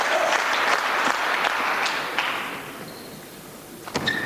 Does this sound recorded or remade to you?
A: recorded